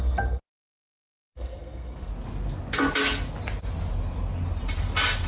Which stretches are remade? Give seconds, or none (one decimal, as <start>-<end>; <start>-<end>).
0.0-2.1

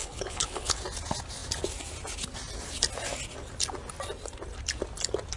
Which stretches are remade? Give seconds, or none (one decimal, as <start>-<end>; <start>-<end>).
0.0-0.8

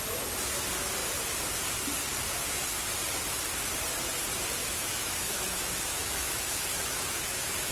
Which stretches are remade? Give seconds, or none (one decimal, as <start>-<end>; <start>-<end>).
4.6-7.7

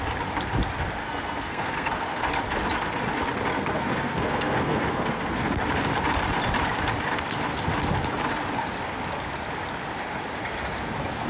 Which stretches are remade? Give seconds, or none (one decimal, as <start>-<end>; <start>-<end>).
1.0-2.2; 3.5-5.5

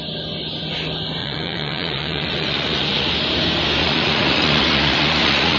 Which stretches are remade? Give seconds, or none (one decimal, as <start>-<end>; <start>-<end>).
1.2-3.1; 3.8-5.6

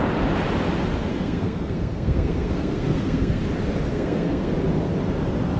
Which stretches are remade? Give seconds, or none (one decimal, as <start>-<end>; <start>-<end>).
1.1-3.4; 3.9-4.5